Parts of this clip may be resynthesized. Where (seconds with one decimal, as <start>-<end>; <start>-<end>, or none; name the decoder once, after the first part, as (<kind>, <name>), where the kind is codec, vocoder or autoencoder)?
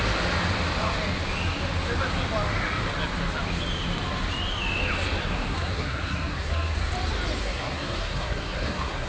5.2-6.9 (codec, SNAC); 7.4-9.1